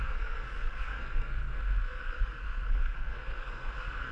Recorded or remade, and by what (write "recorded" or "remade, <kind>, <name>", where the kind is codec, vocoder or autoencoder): remade, codec, SNAC